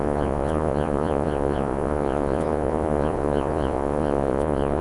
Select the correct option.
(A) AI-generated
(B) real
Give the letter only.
A